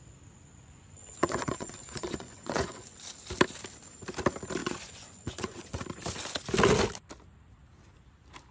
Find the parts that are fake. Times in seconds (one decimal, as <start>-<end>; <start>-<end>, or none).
0.6-3.0; 4.6-5.8

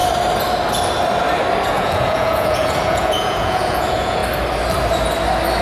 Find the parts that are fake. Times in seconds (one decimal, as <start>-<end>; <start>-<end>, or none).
1.7-4.2

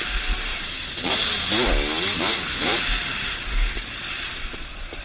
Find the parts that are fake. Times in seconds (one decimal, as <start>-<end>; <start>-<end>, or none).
0.5-1.5; 4.1-5.0

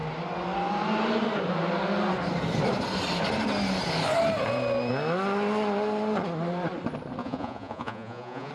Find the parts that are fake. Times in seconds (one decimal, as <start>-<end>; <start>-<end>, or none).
7.2-8.5